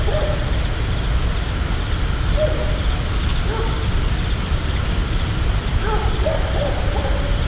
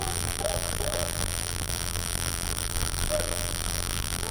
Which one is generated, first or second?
second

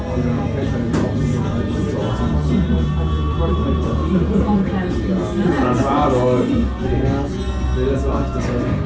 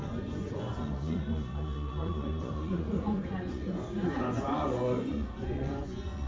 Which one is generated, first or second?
second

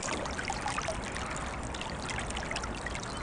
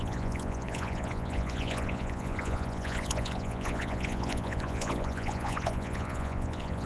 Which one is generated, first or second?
second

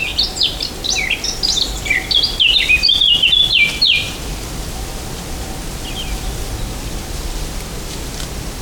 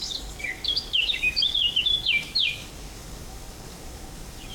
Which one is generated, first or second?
second